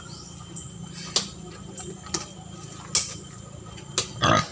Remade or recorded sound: recorded